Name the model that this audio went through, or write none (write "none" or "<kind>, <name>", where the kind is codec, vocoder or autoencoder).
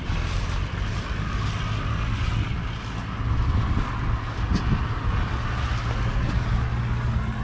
none